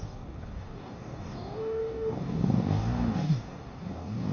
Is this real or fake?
fake